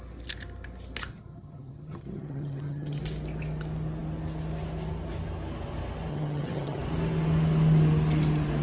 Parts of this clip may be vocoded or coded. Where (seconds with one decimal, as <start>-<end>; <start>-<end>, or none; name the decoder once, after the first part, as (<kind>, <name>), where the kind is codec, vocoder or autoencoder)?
1.1-3.0 (vocoder, HiFi-GAN); 6.1-6.8